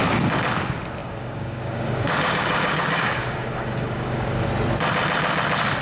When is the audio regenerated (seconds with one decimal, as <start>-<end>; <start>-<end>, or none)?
1.0-4.5